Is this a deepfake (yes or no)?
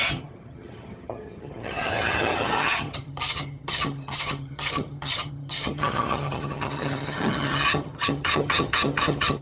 yes